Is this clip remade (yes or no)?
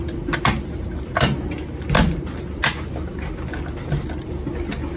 no